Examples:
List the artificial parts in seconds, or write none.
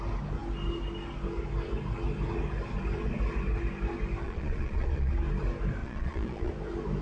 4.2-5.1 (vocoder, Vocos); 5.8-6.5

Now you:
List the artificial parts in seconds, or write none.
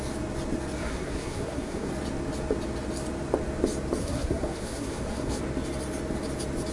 0.8-1.9 (codec, SNAC); 4.0-5.4